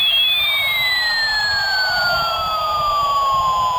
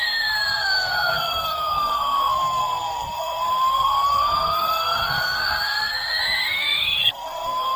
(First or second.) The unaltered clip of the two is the first